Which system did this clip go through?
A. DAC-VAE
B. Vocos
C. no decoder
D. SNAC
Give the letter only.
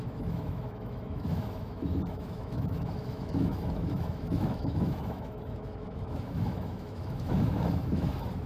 A